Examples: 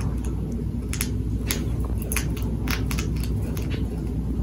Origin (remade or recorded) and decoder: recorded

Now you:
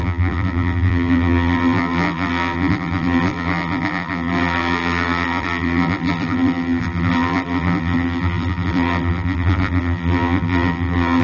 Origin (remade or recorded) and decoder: remade, vocoder, BigVGAN v2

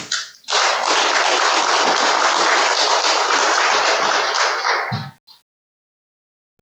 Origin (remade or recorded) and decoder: recorded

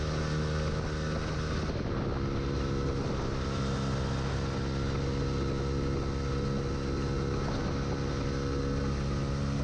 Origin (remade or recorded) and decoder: recorded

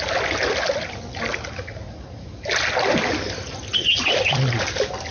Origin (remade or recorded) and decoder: recorded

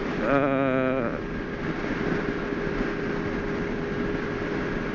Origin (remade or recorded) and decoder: recorded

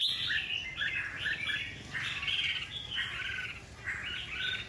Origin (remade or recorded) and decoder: recorded